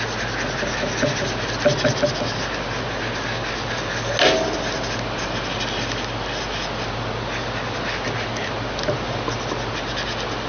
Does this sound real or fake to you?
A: real